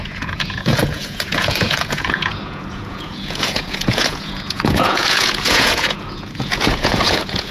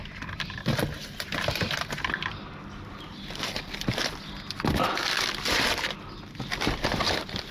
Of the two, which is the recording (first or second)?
second